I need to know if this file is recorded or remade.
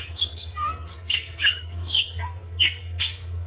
remade